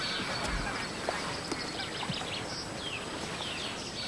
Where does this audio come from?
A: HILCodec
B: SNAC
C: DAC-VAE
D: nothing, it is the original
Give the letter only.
D